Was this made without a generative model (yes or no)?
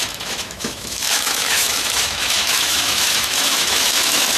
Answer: no